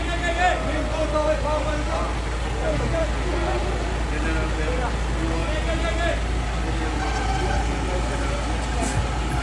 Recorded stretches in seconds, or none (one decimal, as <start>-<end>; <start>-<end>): 0.0-9.4